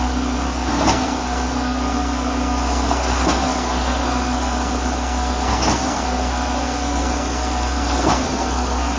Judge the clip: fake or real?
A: fake